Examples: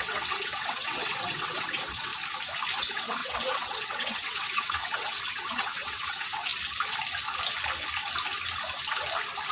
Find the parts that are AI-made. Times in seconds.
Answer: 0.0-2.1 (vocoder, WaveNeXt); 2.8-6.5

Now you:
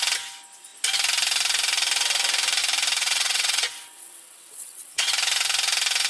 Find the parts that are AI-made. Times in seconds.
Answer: 3.0-5.1 (vocoder, WaveNeXt)

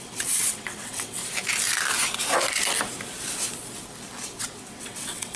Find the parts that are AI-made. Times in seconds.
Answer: 0.0-1.2 (vocoder, WaveNeXt); 4.4-5.4

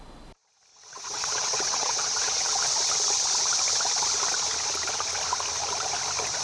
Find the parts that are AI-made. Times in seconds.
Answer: 0.7-2.7 (vocoder, WaveNeXt)

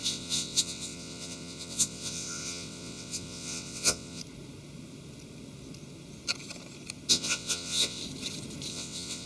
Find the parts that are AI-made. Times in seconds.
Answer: 0.0-4.2 (vocoder, WaveNeXt); 7.1-8.0; 8.7-9.3

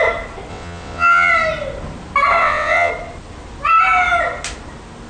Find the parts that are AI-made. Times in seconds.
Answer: 0.5-1.3 (vocoder, WaveNeXt); 2.4-2.9

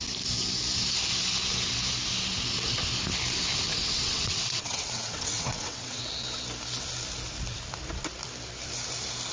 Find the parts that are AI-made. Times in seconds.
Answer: 3.7-6.0 (vocoder, WaveNeXt)